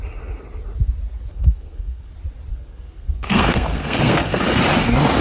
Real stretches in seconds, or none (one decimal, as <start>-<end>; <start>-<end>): 0.0-1.3; 2.1-2.5; 4.4-5.2